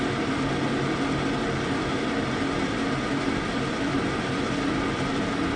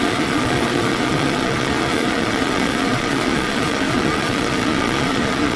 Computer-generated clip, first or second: second